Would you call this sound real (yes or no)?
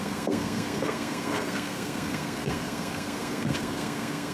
no